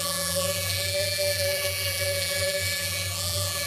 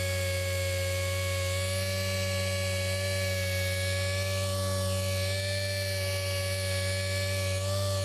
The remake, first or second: first